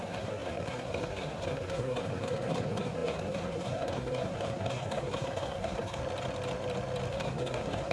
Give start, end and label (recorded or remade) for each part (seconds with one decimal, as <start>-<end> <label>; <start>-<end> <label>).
0.0-6.0 remade; 6.0-7.1 recorded; 7.1-7.9 remade